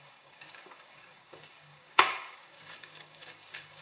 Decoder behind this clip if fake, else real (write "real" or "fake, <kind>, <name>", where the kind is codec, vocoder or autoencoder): fake, codec, DAC